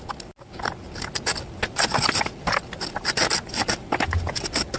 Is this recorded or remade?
recorded